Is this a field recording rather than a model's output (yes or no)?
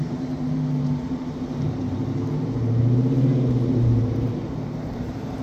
no